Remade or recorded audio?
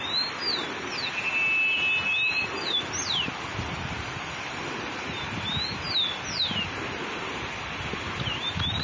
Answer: recorded